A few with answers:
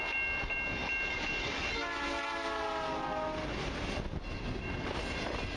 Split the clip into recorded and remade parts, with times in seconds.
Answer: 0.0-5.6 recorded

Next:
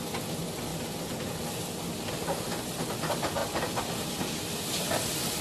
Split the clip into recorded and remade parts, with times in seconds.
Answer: 0.0-3.4 recorded; 3.4-5.4 remade

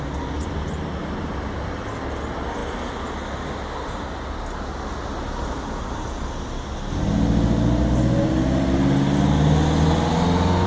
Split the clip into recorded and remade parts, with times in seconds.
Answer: 0.0-10.7 recorded

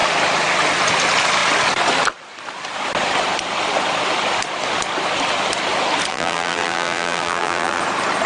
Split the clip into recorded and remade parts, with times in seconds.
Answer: 0.0-6.1 recorded; 6.1-7.8 remade; 7.8-8.3 recorded

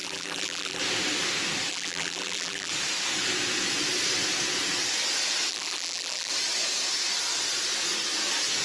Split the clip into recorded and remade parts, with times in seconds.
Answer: 0.0-0.8 remade; 0.8-1.7 recorded; 1.7-2.7 remade; 2.7-5.5 recorded; 5.5-6.3 remade; 6.3-8.6 recorded

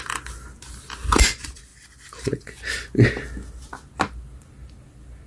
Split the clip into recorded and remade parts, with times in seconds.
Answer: 0.0-5.3 recorded

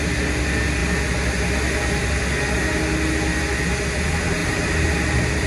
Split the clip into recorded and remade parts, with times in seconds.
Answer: 0.0-4.4 recorded; 4.4-5.5 remade

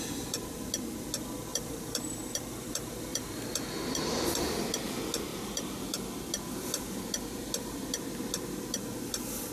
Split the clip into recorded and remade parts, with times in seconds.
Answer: 0.0-1.5 recorded; 1.5-4.7 remade; 4.7-5.3 recorded; 5.3-5.9 remade; 5.9-9.5 recorded